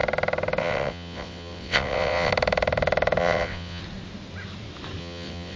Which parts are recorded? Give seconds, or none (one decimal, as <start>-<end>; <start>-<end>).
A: 0.0-0.6; 2.3-3.2; 3.8-5.0